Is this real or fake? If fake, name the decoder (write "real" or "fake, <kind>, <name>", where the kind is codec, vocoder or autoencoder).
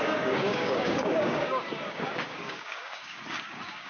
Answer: fake, codec, DAC